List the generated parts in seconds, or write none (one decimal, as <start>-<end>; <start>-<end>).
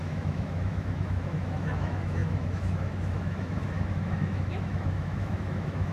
0.0-5.9